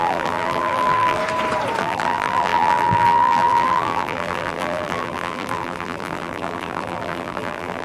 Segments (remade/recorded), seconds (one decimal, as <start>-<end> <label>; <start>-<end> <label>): 0.0-1.2 remade; 1.2-1.8 recorded; 1.8-7.8 remade